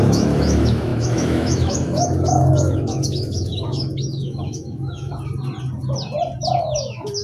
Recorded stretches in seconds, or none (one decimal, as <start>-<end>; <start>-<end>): 5.1-6.6